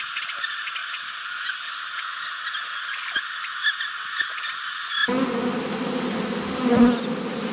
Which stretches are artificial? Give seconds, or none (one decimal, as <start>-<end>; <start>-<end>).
none